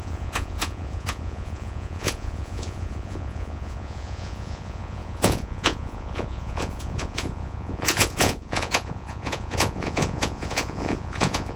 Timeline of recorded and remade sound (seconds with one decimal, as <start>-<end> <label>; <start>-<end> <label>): 0.0-11.6 remade